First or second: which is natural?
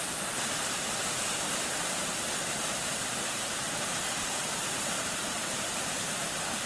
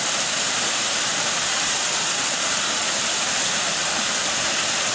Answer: second